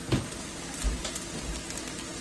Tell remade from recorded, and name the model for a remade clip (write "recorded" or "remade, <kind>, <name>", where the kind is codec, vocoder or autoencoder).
recorded